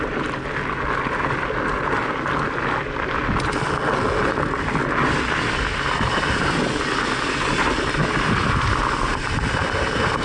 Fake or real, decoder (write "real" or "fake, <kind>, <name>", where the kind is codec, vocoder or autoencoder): real